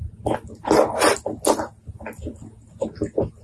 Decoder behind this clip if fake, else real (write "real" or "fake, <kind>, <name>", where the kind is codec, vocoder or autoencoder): real